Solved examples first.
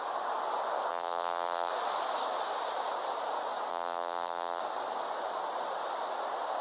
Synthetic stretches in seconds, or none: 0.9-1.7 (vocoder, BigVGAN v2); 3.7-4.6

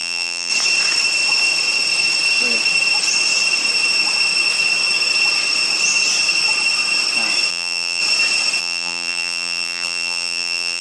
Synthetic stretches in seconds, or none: 0.0-0.5 (vocoder, BigVGAN v2); 7.5-8.0; 8.6-10.8

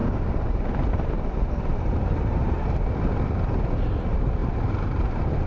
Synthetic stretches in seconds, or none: 0.0-2.9 (vocoder, BigVGAN v2); 4.4-5.5

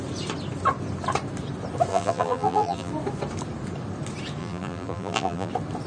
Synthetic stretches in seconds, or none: 1.9-2.9 (vocoder, BigVGAN v2); 4.4-5.5